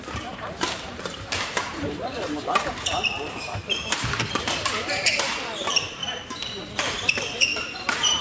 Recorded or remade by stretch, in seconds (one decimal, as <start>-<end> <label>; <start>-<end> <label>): 0.0-6.0 remade; 6.0-6.8 recorded; 6.8-8.2 remade